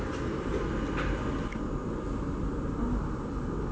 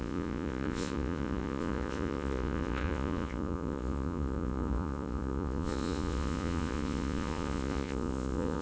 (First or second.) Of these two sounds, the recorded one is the first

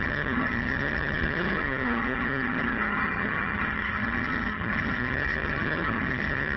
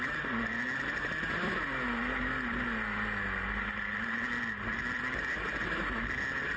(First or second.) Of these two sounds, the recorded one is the second